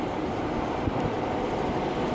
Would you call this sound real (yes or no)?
yes